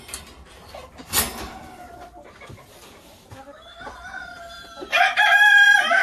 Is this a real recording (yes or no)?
no